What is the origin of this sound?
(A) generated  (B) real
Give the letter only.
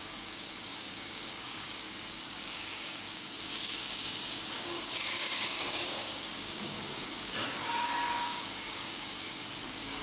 A